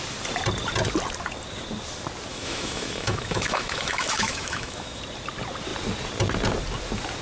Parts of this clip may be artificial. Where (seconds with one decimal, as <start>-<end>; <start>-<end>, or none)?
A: 2.3-5.0